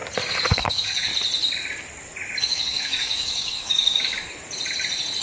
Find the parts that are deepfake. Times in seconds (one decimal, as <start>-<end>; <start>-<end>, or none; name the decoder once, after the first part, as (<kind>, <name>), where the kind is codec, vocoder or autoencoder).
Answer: 0.5-1.1 (codec, DAC); 2.4-4.3